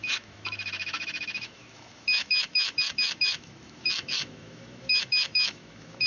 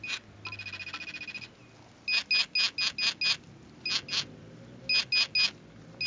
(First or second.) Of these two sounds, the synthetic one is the first